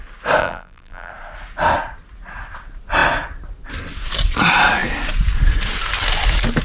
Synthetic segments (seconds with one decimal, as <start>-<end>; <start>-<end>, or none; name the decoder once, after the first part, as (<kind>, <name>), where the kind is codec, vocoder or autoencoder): 0.4-1.1 (vocoder, BigVGAN v2)